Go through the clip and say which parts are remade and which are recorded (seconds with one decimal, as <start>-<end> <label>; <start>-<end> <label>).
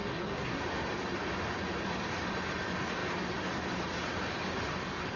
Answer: 0.0-0.6 remade; 0.6-5.2 recorded